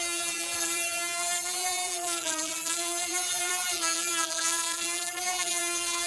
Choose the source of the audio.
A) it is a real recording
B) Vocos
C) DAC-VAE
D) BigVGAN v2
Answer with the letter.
D